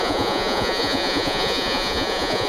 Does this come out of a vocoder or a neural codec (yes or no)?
yes